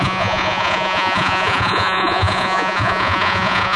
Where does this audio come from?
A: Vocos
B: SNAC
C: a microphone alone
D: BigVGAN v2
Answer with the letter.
A